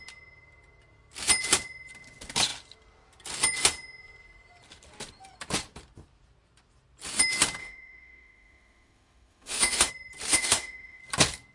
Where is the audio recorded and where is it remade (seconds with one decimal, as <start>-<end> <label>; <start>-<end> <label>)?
0.0-7.6 recorded; 7.6-9.9 remade; 9.9-10.3 recorded; 10.3-11.0 remade; 11.0-11.5 recorded